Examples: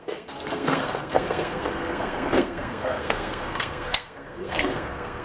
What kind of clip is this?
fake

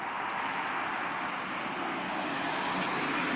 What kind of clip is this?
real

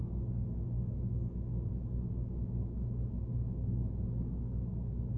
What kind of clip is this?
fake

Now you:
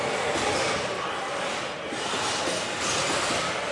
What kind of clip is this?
real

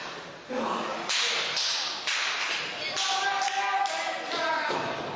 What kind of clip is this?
real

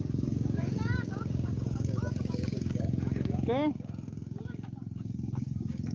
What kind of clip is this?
fake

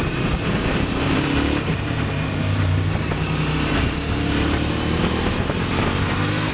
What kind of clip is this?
fake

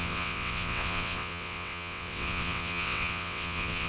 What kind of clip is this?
fake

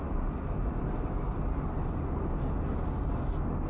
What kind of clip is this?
real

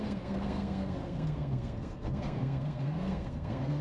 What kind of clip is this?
fake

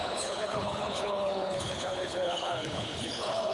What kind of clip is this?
fake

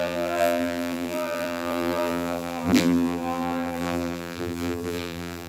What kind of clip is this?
fake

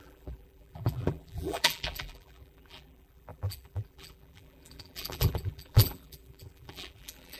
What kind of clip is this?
fake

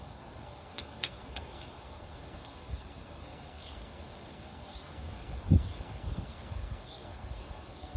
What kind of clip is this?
fake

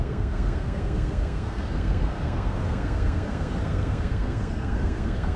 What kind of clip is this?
fake